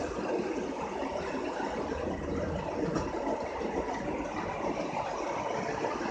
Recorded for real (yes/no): yes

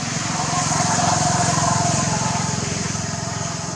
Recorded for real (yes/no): yes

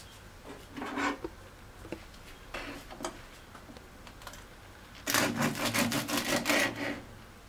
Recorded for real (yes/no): yes